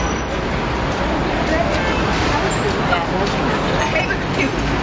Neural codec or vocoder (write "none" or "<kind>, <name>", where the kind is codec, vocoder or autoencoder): none